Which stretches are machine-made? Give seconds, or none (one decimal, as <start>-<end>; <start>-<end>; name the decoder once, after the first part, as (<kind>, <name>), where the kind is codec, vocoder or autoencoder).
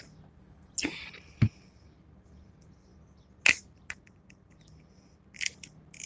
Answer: none